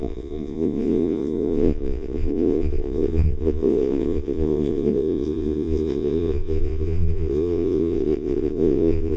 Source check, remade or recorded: remade